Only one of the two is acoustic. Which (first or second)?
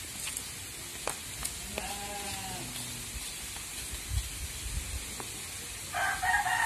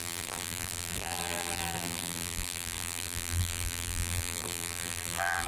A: first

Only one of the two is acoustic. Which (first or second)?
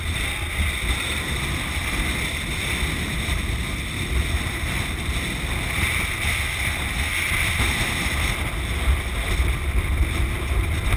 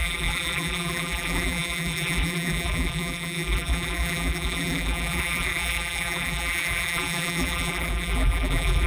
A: first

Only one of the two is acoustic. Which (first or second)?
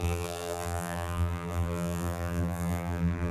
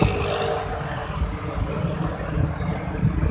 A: second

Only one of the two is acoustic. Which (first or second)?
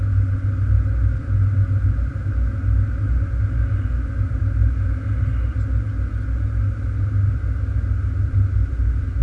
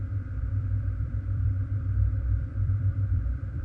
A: first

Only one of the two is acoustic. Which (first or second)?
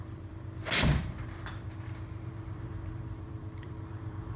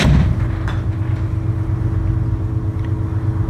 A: second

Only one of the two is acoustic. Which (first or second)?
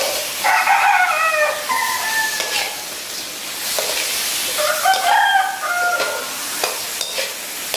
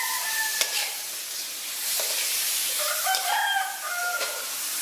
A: first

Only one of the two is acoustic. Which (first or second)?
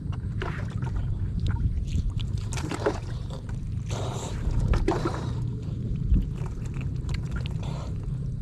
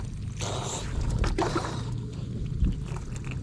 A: second